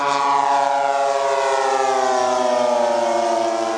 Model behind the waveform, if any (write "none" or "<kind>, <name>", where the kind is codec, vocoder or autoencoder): none